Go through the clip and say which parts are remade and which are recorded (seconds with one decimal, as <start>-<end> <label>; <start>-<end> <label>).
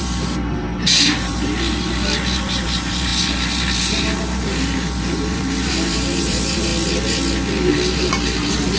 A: 0.0-6.7 remade; 6.7-7.7 recorded; 7.7-8.8 remade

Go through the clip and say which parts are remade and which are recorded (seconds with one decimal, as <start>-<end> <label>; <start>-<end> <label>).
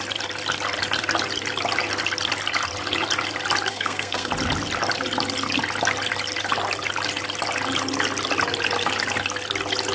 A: 0.0-3.7 recorded; 3.7-4.3 remade; 4.3-9.9 recorded